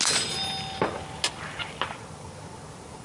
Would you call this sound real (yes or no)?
yes